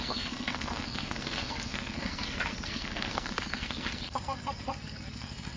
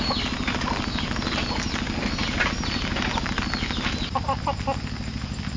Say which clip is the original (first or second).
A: second